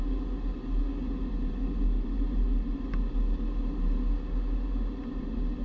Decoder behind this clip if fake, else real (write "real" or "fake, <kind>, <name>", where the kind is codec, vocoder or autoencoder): real